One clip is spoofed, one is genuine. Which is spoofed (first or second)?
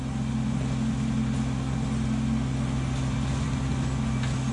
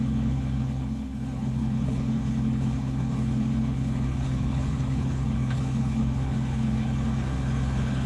second